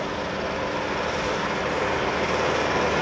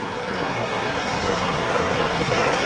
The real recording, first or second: first